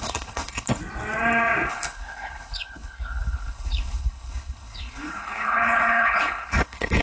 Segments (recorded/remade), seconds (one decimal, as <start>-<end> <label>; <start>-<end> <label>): 0.0-0.8 remade; 0.8-1.7 recorded; 1.7-7.0 remade